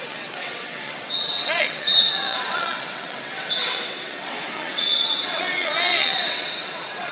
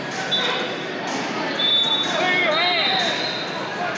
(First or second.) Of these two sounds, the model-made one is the first